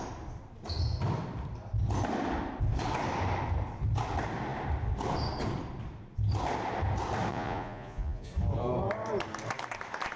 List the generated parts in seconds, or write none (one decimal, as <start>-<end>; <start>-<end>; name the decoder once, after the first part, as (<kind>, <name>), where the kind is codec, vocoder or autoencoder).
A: 7.3-8.3 (vocoder, Vocos)